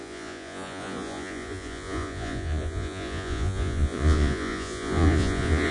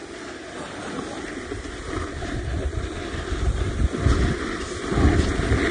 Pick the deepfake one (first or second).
first